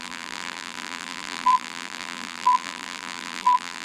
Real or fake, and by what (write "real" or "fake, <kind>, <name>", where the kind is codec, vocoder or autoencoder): fake, vocoder, BigVGAN v2